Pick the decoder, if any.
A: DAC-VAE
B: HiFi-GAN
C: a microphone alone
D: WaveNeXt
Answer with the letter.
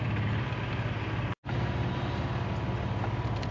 C